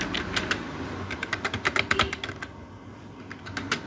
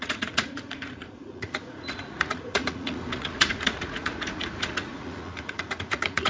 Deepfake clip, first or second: second